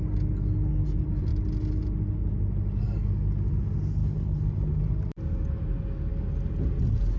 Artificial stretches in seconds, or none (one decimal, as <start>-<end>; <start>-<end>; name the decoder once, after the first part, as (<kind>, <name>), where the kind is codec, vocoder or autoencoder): 4.0-4.8 (codec, HILCodec)